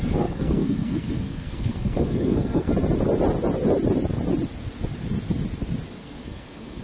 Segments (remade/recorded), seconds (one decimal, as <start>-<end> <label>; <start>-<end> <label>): 0.0-2.7 remade; 2.7-6.0 recorded; 6.0-6.8 remade

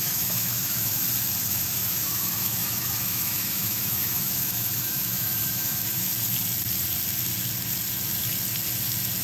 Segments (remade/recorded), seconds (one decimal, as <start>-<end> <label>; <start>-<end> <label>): 0.0-1.0 remade; 1.0-1.5 recorded; 1.5-6.1 remade; 6.1-9.2 recorded